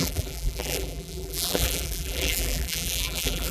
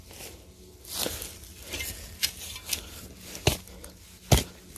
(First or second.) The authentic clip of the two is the second